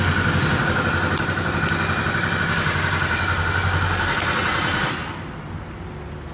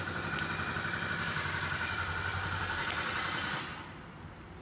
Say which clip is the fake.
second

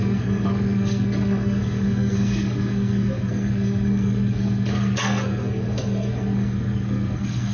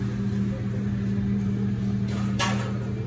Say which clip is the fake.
first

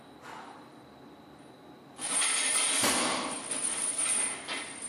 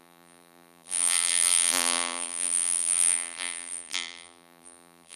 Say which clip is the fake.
second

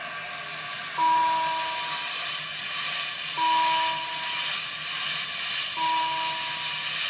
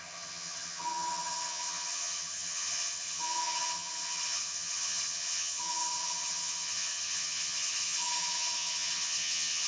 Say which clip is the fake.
second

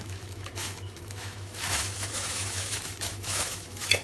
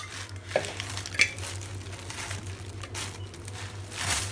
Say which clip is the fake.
first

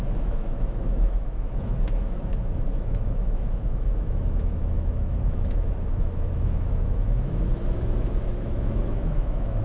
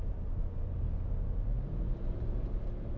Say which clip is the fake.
first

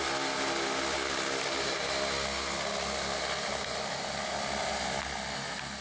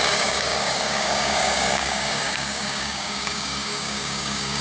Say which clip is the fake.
second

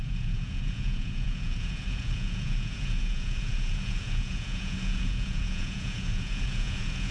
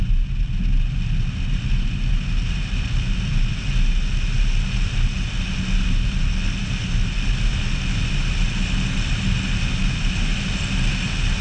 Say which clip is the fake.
first